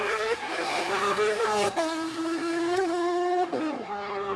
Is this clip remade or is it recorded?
remade